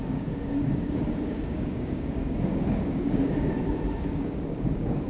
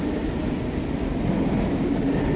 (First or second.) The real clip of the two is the second